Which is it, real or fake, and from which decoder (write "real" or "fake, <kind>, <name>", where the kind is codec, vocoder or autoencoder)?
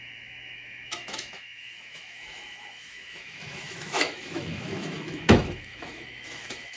fake, autoencoder, DAC-VAE